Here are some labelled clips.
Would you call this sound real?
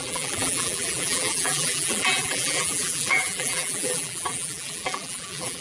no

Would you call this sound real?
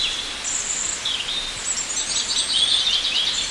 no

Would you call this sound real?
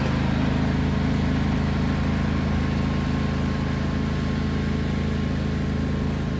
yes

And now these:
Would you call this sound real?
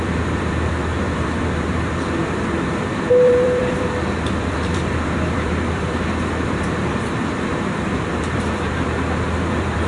no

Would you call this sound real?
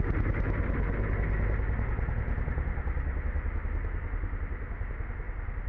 yes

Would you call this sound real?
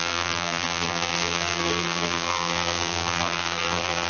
no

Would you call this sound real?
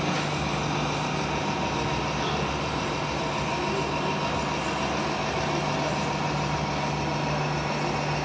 yes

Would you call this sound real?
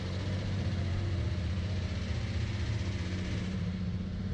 no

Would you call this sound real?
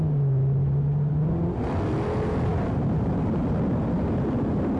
yes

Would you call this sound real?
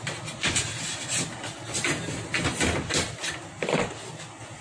yes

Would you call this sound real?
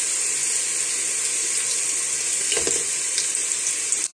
yes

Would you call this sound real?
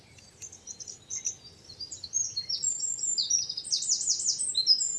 yes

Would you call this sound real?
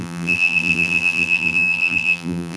no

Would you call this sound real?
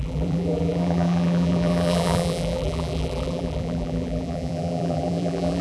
no